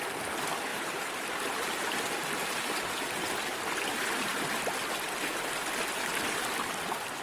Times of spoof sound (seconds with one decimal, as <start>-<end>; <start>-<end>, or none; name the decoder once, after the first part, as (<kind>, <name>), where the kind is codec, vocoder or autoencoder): 0.7-3.3 (vocoder, BigVGAN v2)